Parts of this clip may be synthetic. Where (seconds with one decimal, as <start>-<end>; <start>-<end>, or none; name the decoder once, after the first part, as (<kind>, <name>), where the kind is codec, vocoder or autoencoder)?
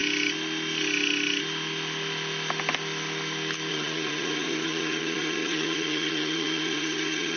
3.7-7.4 (vocoder, HiFi-GAN)